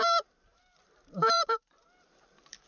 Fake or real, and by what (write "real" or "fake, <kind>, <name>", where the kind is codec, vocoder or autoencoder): fake, vocoder, BigVGAN v2